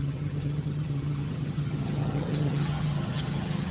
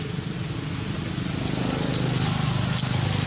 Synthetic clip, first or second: first